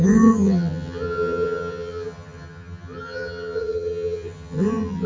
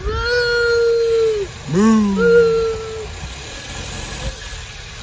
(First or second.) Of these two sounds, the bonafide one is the second